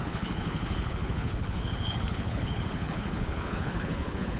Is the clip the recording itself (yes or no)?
no